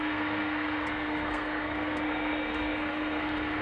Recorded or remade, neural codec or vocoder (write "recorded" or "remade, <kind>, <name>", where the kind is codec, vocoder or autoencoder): remade, codec, SNAC